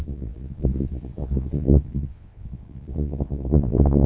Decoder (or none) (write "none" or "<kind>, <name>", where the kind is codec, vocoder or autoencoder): vocoder, Vocos